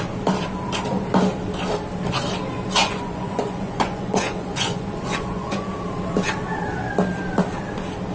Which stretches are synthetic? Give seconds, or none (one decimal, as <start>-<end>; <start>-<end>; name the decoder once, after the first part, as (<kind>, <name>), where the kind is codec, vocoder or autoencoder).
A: 2.8-5.7 (vocoder, Vocos)